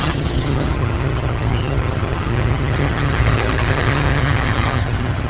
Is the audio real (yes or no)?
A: no